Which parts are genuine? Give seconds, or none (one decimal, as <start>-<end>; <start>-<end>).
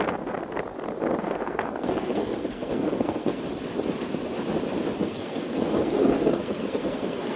0.0-1.2; 3.4-5.0